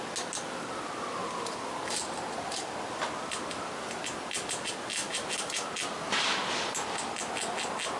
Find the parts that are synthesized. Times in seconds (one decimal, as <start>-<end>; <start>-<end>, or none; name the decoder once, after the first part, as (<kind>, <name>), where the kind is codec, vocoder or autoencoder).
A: 1.2-2.8 (vocoder, BigVGAN v2)